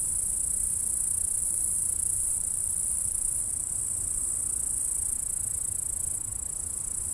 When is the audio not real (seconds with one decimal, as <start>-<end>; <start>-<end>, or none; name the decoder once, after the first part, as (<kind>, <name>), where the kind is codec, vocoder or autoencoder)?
1.4-3.7 (vocoder, BigVGAN v2)